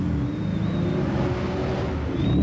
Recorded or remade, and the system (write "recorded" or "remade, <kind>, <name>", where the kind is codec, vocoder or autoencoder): recorded